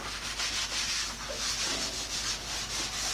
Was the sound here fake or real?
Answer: real